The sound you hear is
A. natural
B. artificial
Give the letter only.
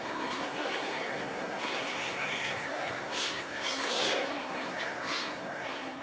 B